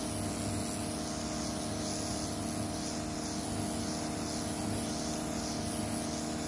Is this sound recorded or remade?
recorded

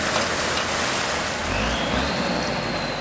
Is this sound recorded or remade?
recorded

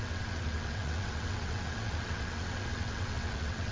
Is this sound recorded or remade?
remade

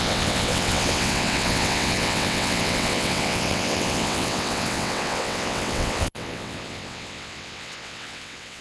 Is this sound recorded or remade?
remade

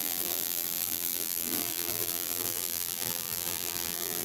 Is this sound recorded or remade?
remade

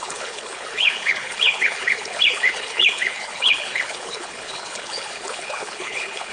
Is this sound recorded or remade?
remade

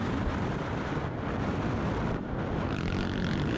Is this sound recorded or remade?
recorded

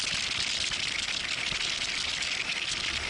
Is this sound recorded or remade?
remade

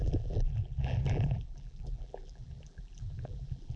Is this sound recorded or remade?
remade